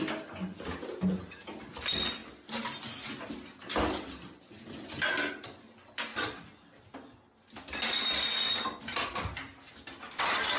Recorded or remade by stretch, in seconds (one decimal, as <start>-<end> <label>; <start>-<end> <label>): 0.0-10.6 recorded